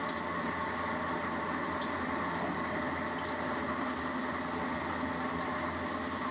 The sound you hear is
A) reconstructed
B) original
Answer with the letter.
B